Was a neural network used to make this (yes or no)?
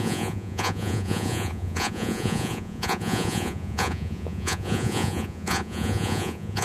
yes